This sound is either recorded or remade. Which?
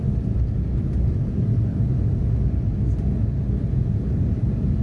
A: recorded